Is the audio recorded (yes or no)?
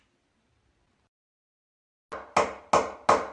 yes